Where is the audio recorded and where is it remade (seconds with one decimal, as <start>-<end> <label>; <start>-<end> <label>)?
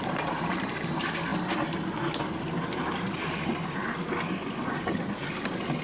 0.0-1.3 remade; 1.3-4.8 recorded; 4.8-5.2 remade; 5.2-5.8 recorded